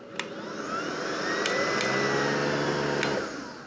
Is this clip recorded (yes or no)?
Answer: yes